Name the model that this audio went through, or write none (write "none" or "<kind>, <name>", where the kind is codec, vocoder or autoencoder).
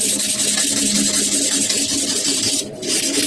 none